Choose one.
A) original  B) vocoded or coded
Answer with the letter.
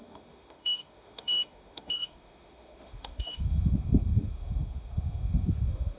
B